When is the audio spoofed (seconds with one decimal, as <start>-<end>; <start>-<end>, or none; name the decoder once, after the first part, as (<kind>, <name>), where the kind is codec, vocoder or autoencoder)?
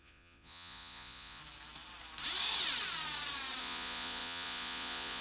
0.0-1.4 (vocoder, Vocos); 3.6-5.2